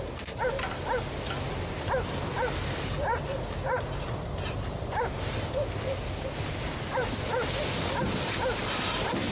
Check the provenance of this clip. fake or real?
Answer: real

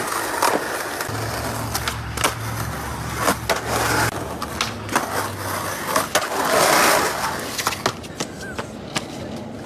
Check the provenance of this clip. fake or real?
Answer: real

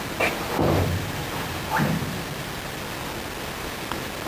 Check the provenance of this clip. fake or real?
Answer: real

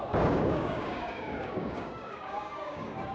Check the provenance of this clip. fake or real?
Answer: fake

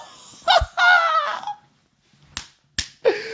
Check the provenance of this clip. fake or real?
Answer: real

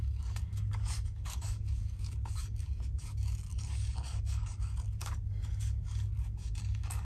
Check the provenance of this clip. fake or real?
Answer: fake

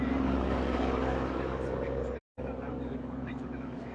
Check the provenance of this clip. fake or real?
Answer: fake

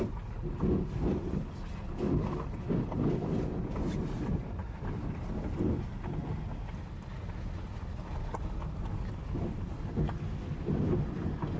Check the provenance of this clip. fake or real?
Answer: real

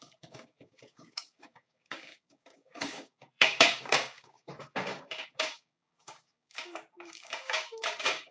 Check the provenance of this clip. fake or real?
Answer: fake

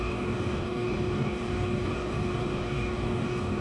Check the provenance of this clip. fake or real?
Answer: fake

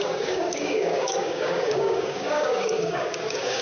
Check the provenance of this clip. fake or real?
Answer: fake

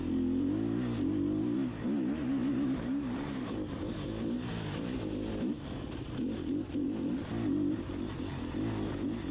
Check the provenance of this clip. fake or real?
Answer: real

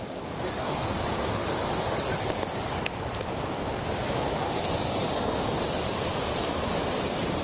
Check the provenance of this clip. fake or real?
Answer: fake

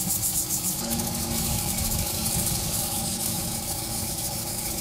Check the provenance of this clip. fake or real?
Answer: fake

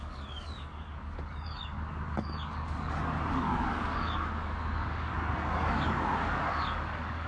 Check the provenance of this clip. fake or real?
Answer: fake